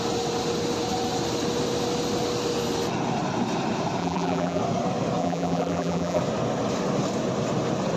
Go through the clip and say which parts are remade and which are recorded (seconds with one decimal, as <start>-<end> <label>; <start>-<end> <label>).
0.0-4.0 recorded; 4.0-4.6 remade; 4.6-5.2 recorded; 5.2-6.2 remade; 6.2-8.0 recorded